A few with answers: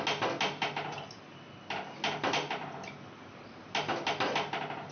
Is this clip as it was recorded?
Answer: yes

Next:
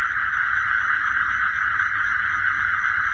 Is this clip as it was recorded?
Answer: yes